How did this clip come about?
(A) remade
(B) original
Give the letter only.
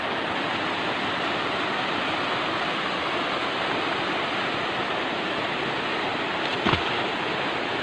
B